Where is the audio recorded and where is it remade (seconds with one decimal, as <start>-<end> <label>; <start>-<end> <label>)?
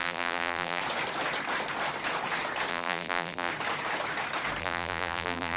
0.0-0.8 remade; 0.8-2.7 recorded; 2.7-3.5 remade; 3.5-4.6 recorded; 4.6-5.6 remade